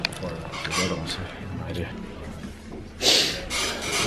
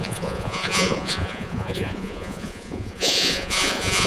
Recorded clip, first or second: first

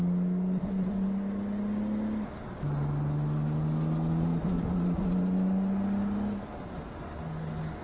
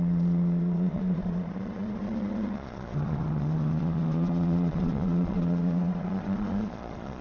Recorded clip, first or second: first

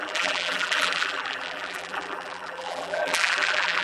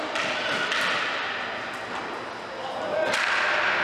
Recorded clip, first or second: second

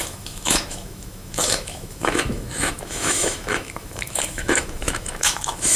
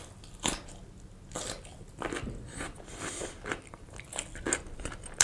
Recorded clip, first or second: second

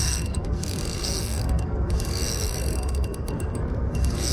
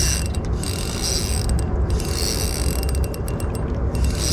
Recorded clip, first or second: second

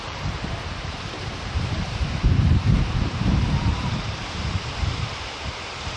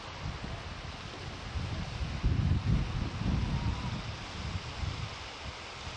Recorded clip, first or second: second